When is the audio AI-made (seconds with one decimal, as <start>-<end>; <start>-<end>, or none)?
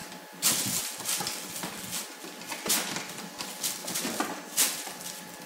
3.8-4.3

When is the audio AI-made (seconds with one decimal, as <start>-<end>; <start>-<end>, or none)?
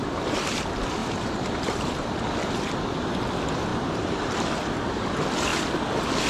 1.0-2.1; 3.7-4.5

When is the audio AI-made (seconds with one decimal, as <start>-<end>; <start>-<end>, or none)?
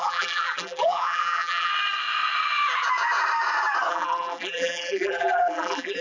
0.0-1.7; 3.9-6.0